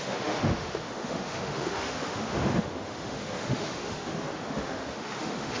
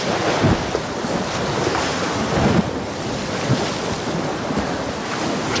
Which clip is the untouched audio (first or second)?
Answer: second